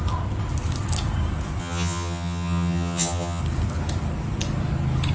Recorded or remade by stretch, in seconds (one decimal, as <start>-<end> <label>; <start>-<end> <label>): 0.0-1.6 recorded; 1.6-3.4 remade; 3.4-5.1 recorded